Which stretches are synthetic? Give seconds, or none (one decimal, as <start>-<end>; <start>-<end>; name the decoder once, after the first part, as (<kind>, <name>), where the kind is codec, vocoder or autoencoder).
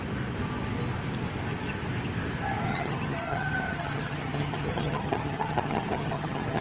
2.7-6.6 (vocoder, HiFi-GAN)